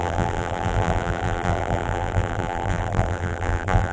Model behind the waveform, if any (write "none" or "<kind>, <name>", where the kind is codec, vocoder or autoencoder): vocoder, BigVGAN v2